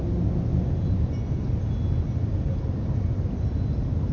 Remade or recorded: recorded